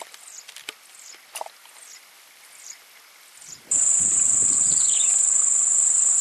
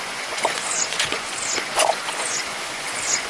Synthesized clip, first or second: second